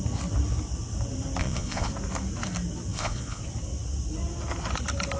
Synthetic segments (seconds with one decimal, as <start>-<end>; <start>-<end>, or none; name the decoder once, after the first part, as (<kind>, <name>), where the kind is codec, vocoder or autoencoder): 1.4-1.9 (vocoder, Vocos); 2.9-3.4